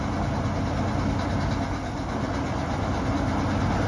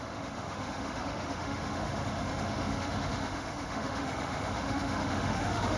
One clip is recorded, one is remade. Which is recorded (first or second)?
first